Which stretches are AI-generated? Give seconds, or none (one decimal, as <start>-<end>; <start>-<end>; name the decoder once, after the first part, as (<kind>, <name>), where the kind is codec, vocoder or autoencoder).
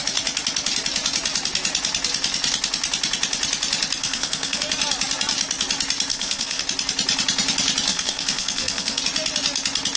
4.0-4.6 (codec, SNAC); 6.1-6.6; 7.9-9.0